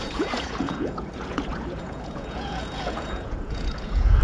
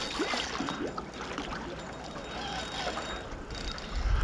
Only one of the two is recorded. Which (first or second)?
second